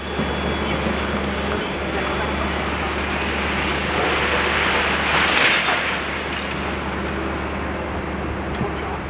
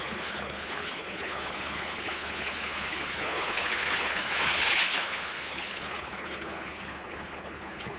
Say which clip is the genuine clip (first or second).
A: first